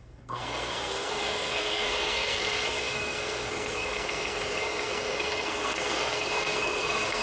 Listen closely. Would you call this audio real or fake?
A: fake